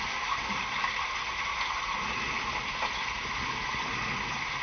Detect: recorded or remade recorded